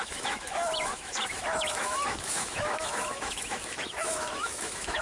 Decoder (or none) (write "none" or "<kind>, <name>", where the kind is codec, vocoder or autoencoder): autoencoder, DAC-VAE